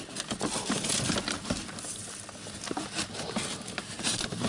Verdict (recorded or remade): recorded